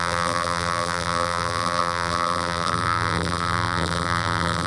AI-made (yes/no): yes